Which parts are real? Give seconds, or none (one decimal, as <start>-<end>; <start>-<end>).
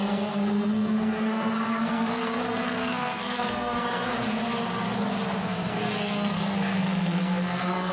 4.1-5.4